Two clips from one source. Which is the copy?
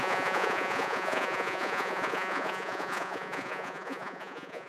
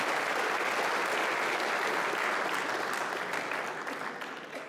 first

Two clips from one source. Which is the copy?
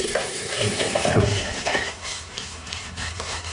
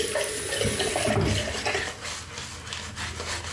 first